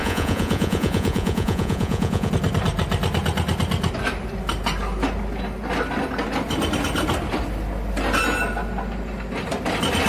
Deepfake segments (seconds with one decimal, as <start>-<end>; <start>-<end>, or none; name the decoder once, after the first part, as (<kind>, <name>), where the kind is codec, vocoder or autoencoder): 0.0-2.3 (vocoder, Vocos)